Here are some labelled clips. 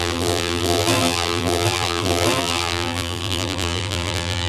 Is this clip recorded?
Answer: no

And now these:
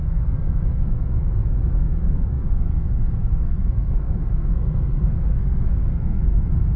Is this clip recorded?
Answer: no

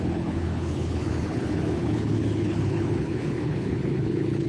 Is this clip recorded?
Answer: no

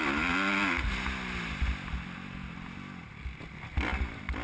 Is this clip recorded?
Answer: yes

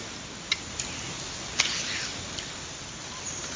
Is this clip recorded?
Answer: yes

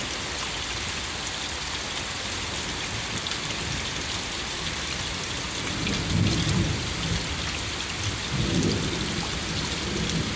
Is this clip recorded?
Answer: yes